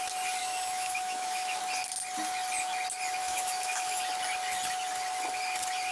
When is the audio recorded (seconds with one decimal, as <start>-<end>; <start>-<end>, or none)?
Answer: 0.0-0.4; 1.6-3.2; 4.0-5.9

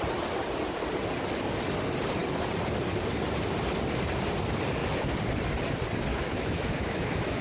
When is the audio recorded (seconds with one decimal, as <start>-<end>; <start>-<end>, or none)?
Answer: 0.0-6.1

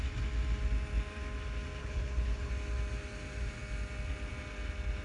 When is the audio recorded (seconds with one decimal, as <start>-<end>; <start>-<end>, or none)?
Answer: 0.0-1.8; 2.5-5.0

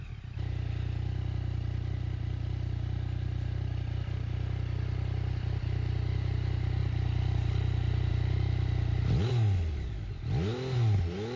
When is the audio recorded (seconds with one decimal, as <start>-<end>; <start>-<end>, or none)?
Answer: 0.0-11.4

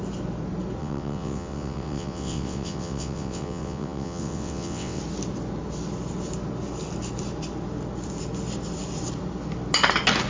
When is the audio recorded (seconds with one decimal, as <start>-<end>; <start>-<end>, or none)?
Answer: 0.0-0.8; 5.0-10.3